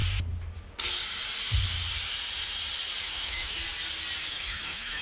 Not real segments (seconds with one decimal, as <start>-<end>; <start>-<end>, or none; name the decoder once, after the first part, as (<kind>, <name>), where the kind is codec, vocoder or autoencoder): 3.0-3.6 (autoencoder, DAC-VAE); 4.3-5.0